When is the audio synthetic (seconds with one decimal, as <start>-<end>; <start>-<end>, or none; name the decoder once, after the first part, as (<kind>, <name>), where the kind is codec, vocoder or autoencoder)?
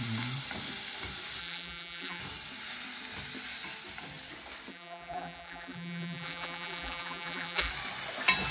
1.4-2.2 (vocoder, BigVGAN v2); 4.7-7.7